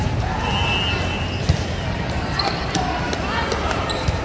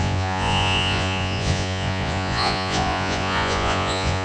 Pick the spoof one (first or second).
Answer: second